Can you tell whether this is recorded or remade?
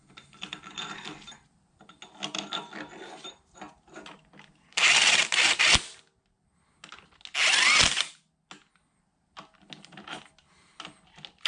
recorded